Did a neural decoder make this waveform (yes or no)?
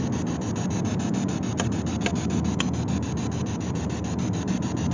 no